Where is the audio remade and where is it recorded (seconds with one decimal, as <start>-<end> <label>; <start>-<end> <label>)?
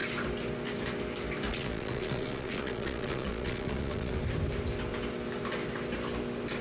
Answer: 0.0-1.5 recorded; 1.5-4.2 remade; 4.2-6.6 recorded